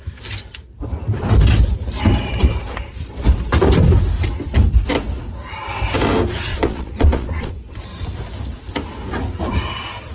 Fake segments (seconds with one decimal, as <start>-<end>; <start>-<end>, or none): 6.5-7.5